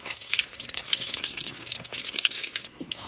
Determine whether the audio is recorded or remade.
remade